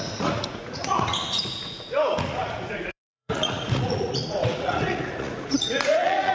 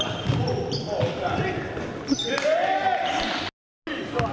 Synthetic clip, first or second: first